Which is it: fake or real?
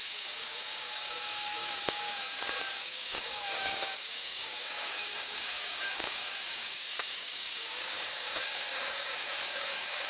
fake